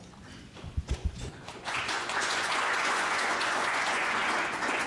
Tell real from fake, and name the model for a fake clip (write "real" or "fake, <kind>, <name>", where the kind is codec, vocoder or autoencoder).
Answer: fake, vocoder, Vocos